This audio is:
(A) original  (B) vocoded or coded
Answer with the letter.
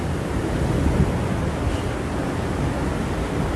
A